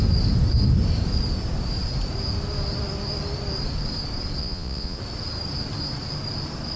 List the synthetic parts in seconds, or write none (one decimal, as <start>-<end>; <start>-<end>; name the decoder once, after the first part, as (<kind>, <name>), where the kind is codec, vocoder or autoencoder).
4.4-5.0 (vocoder, Vocos)